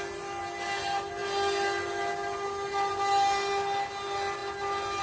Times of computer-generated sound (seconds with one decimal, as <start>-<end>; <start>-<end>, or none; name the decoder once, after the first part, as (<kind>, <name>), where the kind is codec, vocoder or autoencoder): none